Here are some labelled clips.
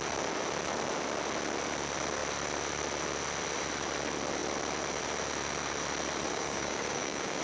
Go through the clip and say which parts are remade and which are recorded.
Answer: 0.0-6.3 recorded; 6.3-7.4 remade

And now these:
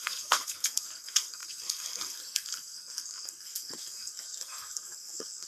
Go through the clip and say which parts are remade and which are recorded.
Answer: 0.0-5.5 remade

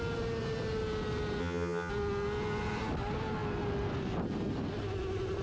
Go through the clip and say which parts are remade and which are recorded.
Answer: 0.0-1.4 recorded; 1.4-1.9 remade; 1.9-5.4 recorded

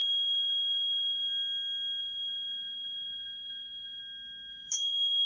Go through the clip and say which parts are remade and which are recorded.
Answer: 0.0-1.3 remade; 1.3-2.0 recorded; 2.0-4.0 remade; 4.0-4.5 recorded; 4.5-5.3 remade

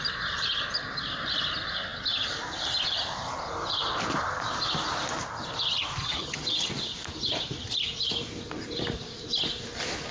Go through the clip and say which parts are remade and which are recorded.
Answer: 0.0-6.0 recorded; 6.0-6.7 remade; 6.7-10.1 recorded

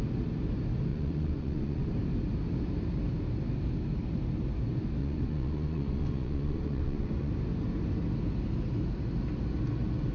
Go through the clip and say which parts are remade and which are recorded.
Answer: 0.0-0.9 recorded; 0.9-1.9 remade; 1.9-5.0 recorded; 5.0-7.3 remade; 7.3-10.1 recorded